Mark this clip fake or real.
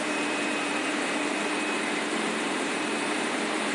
fake